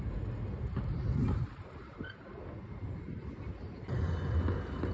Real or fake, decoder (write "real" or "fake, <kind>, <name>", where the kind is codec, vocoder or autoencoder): real